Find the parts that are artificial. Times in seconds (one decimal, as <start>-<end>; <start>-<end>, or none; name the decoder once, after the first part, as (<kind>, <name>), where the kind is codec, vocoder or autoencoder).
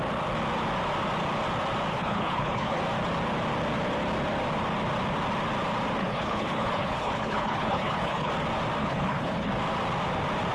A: 1.9-2.8 (codec, HILCodec); 6.0-8.3; 8.8-9.5